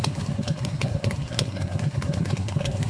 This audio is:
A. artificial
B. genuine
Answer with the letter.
A